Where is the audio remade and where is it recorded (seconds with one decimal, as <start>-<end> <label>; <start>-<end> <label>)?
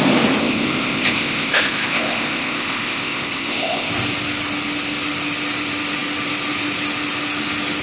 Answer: 0.0-0.4 recorded; 0.4-3.9 remade; 3.9-7.8 recorded